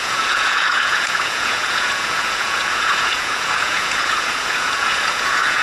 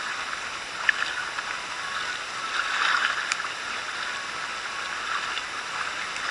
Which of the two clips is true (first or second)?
second